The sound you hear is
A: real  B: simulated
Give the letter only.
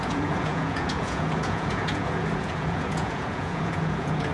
B